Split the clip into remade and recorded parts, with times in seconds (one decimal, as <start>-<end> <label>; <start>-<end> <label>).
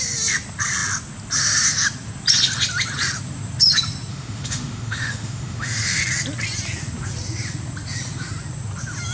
0.0-4.1 recorded; 4.1-6.0 remade; 6.0-9.1 recorded